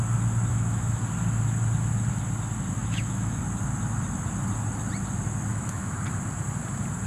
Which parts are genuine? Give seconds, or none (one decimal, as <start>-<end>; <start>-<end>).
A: 0.0-0.5; 1.0-2.8; 3.4-5.5; 6.0-7.1